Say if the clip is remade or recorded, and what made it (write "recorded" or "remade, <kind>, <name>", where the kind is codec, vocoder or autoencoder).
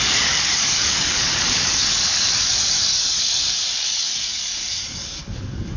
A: remade, codec, DAC